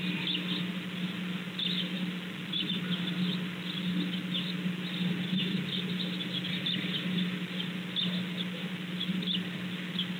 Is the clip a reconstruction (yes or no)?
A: no